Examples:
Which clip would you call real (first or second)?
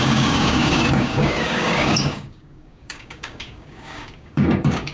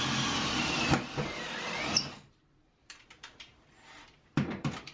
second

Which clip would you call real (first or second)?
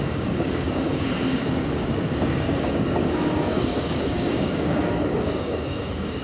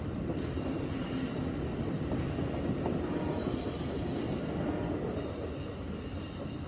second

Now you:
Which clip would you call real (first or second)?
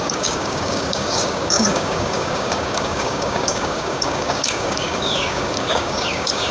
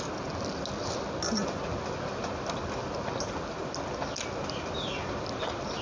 second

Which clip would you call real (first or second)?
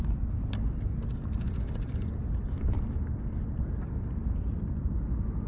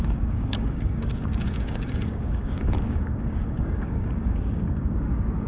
first